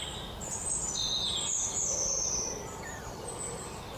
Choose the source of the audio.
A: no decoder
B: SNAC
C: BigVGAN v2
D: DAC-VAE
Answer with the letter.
A